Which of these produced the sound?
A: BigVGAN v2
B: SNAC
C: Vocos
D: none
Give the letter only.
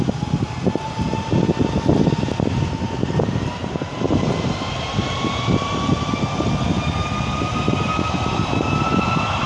D